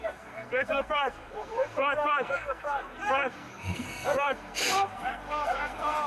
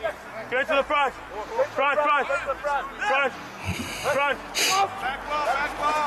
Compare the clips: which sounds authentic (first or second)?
second